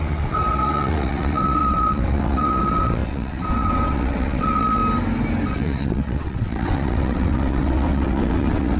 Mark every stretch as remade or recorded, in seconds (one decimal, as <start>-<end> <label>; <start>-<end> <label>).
0.0-4.8 remade; 4.8-5.5 recorded; 5.5-8.8 remade